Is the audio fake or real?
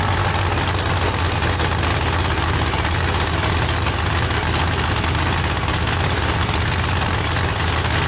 real